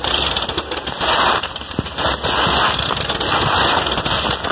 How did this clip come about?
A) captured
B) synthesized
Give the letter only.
A